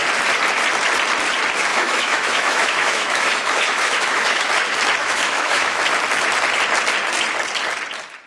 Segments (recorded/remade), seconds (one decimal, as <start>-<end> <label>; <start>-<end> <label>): 0.0-1.7 recorded; 1.7-4.5 remade; 4.5-5.0 recorded; 5.0-5.8 remade; 5.8-8.3 recorded